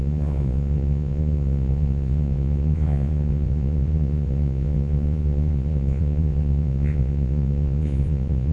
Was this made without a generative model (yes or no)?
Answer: no